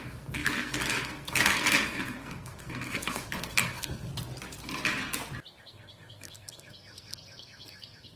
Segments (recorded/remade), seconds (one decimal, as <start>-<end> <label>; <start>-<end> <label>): 0.0-4.1 remade; 4.1-5.6 recorded; 5.6-8.2 remade

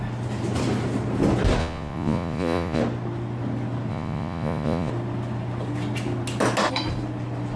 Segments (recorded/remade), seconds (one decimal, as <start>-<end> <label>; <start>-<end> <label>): 0.0-1.6 recorded; 1.6-2.8 remade; 2.8-3.9 recorded; 3.9-4.9 remade; 4.9-7.6 recorded

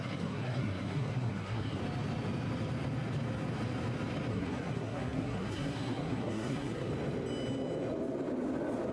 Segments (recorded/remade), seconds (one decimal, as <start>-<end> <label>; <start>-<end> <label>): 0.0-1.8 remade; 1.8-4.3 recorded; 4.3-6.9 remade; 6.9-8.9 recorded

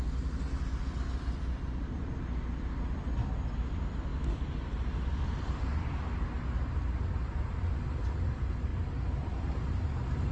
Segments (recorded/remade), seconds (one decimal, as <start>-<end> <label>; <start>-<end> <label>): 0.0-10.3 recorded

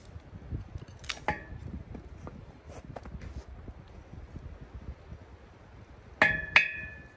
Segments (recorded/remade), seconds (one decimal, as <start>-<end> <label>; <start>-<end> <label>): 0.0-1.6 recorded; 1.6-3.0 remade; 3.0-7.2 recorded

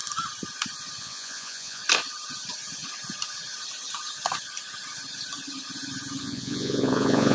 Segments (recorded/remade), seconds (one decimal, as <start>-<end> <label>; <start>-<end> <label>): 0.0-1.0 recorded; 1.0-1.8 remade; 1.8-6.2 recorded; 6.2-7.3 remade

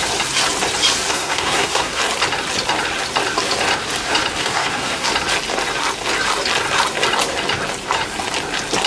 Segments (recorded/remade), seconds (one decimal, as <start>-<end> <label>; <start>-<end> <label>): 0.0-1.1 recorded; 1.1-2.0 remade; 2.0-4.4 recorded; 4.4-5.1 remade; 5.1-8.9 recorded

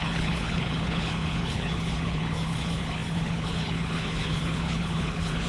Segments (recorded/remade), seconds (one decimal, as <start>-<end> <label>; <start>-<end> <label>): 0.0-5.5 remade